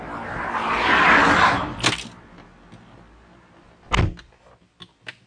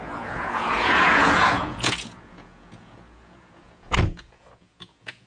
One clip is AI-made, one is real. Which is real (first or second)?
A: first